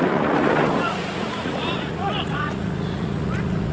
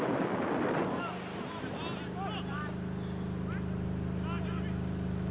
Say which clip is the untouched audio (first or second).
second